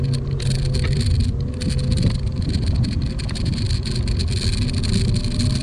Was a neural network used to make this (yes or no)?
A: no